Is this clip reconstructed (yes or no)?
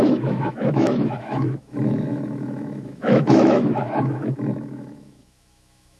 yes